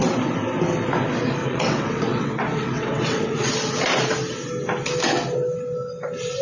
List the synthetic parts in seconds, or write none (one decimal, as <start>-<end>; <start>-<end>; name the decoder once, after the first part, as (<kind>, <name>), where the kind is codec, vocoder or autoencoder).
1.4-3.5 (vocoder, WaveNeXt)